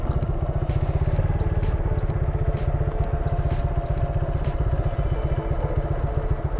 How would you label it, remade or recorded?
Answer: recorded